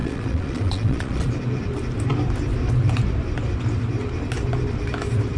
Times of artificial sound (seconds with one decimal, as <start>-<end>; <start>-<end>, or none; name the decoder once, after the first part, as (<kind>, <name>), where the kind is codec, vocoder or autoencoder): 0.0-1.3 (vocoder, Vocos)